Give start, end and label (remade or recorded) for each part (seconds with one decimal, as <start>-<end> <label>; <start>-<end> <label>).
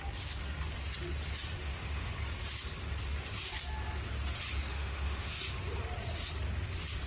0.0-1.6 recorded; 1.6-2.1 remade; 2.1-4.7 recorded; 4.7-5.4 remade; 5.4-7.1 recorded